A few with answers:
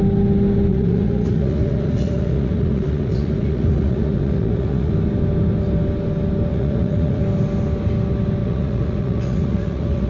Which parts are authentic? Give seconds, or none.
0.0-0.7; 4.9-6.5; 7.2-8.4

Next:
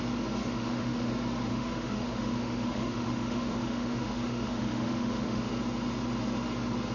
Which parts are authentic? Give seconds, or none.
0.0-0.4; 1.1-1.5; 5.5-6.9

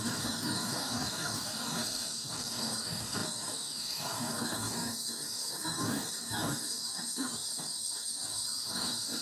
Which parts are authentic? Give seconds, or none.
none

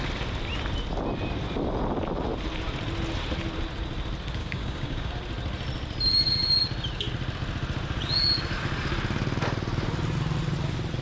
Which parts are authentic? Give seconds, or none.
0.0-4.4; 5.1-11.0

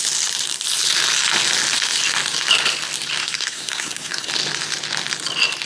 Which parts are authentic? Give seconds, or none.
0.0-3.2; 4.3-5.7

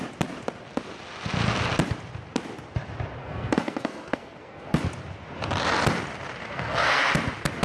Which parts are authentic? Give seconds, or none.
0.0-3.2; 4.8-6.4; 7.1-7.6